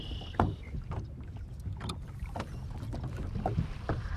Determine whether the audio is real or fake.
real